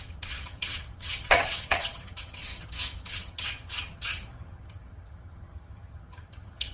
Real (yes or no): no